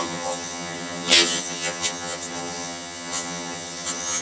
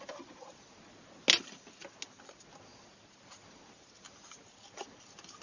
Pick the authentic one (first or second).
second